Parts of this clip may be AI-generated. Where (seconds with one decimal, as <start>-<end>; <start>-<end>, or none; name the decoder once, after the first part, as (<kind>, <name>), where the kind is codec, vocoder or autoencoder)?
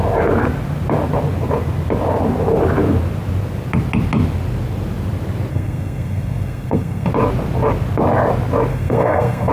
5.5-7.1 (codec, SNAC); 8.7-9.5